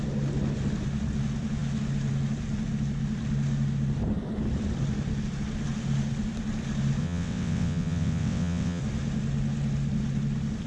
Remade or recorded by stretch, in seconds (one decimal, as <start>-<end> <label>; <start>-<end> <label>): 0.0-7.0 recorded; 7.0-8.8 remade; 8.8-10.7 recorded